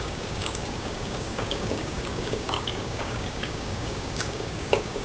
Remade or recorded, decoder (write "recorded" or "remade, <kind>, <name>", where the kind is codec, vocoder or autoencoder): remade, codec, DAC